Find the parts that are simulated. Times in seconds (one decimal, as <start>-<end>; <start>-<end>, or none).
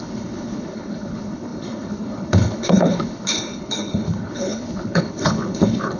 0.0-6.0